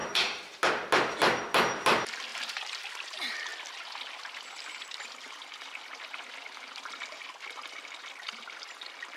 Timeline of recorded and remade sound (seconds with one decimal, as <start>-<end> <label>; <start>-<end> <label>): 0.0-0.6 remade; 0.6-2.3 recorded; 2.3-2.9 remade; 2.9-9.2 recorded